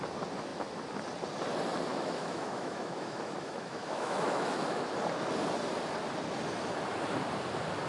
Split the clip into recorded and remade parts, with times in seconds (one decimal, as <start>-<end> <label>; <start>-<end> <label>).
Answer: 0.0-1.9 recorded; 1.9-4.8 remade; 4.8-7.9 recorded